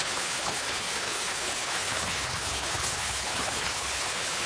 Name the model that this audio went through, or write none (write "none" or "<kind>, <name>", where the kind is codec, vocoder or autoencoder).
codec, HILCodec